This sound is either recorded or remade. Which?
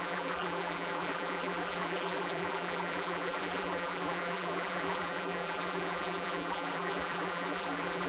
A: remade